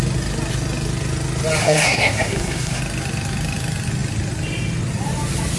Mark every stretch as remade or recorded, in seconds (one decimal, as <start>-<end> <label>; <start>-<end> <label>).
0.0-1.6 recorded; 1.6-2.8 remade; 2.8-5.6 recorded